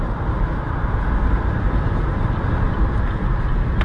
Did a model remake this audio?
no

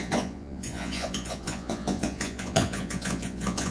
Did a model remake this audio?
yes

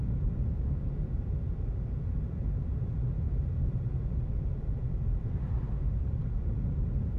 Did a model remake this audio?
yes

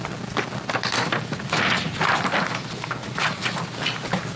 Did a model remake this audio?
no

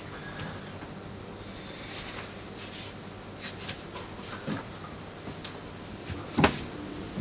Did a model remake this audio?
no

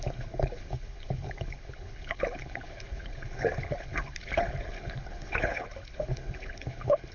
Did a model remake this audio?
yes